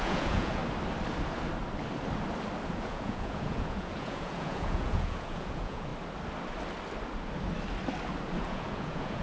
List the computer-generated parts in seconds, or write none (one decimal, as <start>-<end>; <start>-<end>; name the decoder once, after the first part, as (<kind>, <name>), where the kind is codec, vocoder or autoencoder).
0.0-0.6 (vocoder, Vocos); 2.7-5.9; 8.4-9.2

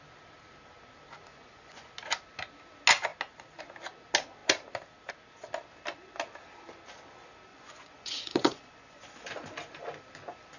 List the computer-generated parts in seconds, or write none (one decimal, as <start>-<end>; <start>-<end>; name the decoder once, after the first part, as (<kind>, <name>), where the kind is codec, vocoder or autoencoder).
1.3-1.9 (vocoder, Vocos); 7.5-9.1

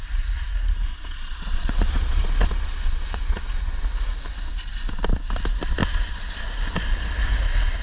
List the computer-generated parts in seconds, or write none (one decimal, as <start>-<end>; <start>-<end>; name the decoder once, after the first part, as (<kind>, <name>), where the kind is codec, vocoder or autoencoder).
0.8-3.7 (vocoder, Vocos)

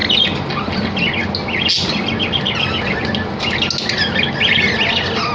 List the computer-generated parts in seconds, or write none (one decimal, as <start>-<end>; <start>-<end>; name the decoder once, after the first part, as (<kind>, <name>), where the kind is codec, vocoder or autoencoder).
none

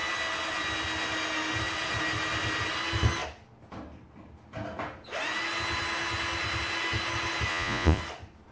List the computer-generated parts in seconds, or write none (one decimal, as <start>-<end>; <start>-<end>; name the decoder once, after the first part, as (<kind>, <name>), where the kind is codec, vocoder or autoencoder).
7.5-8.0 (vocoder, Vocos)

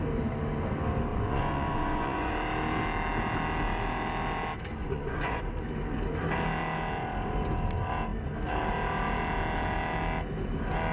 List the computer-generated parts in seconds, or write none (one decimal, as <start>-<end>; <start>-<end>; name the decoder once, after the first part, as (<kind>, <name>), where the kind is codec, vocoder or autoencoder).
1.1-2.3 (vocoder, Vocos); 4.8-5.4

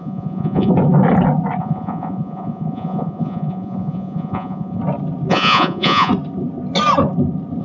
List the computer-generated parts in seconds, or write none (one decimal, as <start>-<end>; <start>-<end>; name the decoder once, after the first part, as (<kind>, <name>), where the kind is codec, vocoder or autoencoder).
0.0-0.7 (vocoder, Vocos); 1.6-4.8; 5.3-6.1

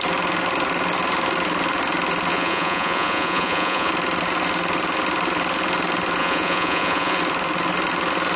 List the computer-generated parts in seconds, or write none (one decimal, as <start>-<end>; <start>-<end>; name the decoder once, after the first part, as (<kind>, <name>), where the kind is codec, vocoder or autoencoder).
2.3-3.9 (vocoder, Vocos); 6.2-7.2